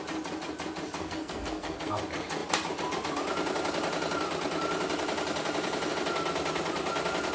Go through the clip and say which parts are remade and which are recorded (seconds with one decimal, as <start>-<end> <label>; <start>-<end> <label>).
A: 0.0-1.0 recorded; 1.0-2.0 remade; 2.0-7.3 recorded